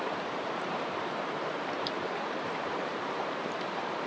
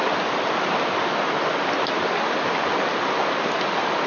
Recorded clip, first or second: second